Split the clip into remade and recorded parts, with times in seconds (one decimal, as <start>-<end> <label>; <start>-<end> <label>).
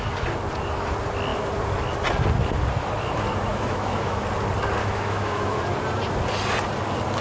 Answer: 0.0-3.5 recorded; 3.5-4.2 remade; 4.2-4.8 recorded; 4.8-5.6 remade; 5.6-7.2 recorded